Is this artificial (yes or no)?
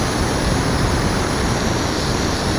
no